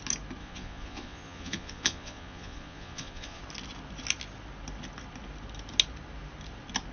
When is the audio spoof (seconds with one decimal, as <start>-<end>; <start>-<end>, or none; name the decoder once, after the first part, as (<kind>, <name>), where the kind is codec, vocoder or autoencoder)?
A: 0.4-3.4 (vocoder, Vocos)